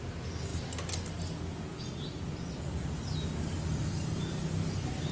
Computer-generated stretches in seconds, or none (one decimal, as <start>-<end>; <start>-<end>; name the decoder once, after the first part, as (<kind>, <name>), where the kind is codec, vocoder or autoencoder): none